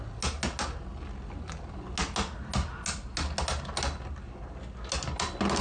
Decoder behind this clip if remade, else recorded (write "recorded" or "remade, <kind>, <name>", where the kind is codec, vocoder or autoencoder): recorded